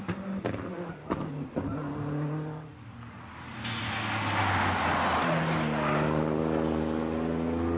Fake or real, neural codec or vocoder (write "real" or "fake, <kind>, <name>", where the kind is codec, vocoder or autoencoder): real